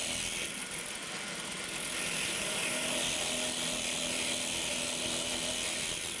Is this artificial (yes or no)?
no